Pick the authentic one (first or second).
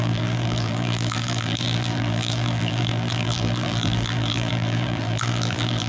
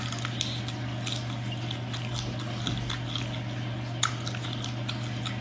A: second